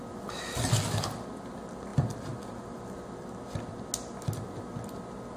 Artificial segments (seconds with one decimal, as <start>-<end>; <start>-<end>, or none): none